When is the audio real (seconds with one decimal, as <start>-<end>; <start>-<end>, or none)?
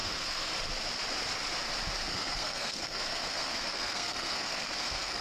0.5-2.1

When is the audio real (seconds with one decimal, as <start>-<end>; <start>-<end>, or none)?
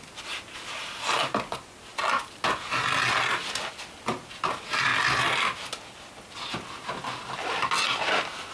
0.0-8.5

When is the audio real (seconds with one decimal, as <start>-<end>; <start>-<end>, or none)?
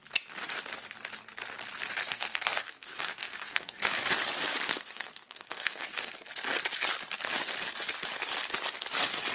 0.0-2.0; 3.9-4.7; 6.1-9.3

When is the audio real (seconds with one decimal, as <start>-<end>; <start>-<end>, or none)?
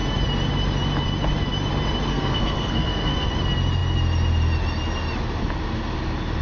0.0-2.1; 3.3-6.4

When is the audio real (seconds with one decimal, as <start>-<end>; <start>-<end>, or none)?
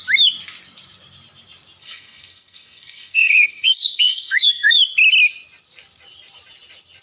0.0-1.8; 4.8-7.0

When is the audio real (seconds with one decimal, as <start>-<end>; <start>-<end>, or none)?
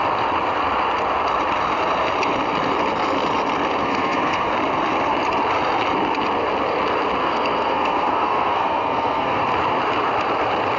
0.0-3.8; 4.5-7.2; 9.4-10.8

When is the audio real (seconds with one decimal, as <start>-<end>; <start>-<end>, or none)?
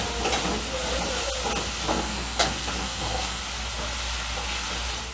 0.0-1.9; 3.4-5.1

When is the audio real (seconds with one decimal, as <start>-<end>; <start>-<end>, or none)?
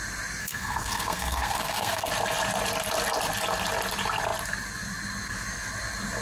0.0-0.4; 2.1-6.2